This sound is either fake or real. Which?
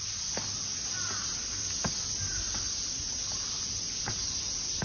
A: real